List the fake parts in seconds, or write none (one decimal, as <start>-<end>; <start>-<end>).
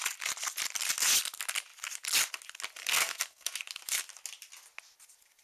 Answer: 2.8-3.6